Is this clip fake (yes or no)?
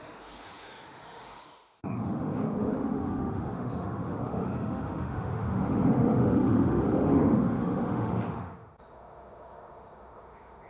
yes